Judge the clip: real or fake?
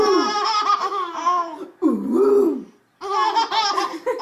real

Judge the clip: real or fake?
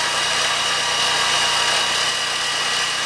real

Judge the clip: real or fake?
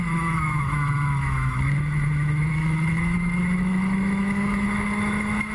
fake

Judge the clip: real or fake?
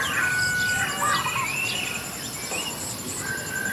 real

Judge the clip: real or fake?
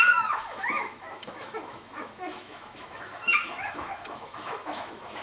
fake